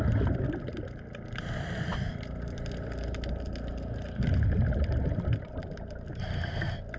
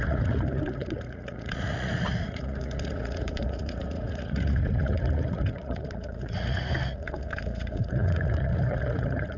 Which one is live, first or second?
first